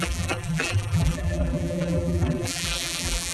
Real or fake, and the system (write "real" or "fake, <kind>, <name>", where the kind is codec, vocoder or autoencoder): fake, vocoder, BigVGAN v2